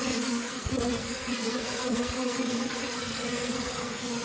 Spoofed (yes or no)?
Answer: yes